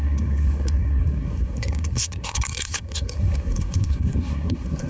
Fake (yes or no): yes